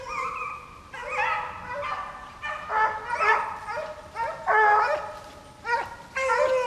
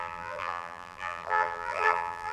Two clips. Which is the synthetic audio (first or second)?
second